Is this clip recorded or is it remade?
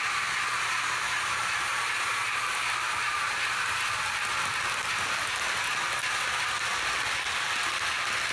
recorded